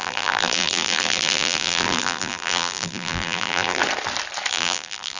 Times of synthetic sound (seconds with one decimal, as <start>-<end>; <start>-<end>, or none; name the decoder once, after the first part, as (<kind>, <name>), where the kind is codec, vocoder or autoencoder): 0.0-3.8 (vocoder, BigVGAN v2); 4.5-5.2